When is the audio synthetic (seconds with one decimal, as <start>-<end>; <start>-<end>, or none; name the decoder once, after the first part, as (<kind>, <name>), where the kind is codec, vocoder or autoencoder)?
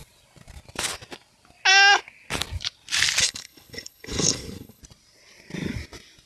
3.2-4.8 (codec, HILCodec)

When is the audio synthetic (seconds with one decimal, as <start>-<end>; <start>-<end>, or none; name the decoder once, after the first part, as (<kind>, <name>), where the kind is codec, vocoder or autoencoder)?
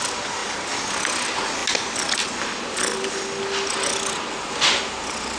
none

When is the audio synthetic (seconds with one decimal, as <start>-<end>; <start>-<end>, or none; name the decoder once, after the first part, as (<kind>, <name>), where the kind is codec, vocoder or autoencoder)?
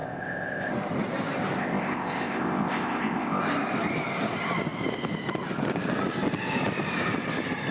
0.0-0.7 (codec, ZipCodec); 1.6-3.4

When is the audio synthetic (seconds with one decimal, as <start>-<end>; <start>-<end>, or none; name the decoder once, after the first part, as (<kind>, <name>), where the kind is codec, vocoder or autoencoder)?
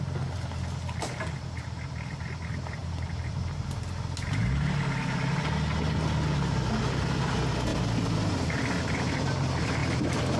2.8-3.7 (vocoder, BigVGAN v2); 9.8-10.4